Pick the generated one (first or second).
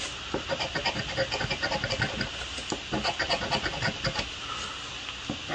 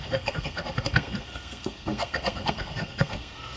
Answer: second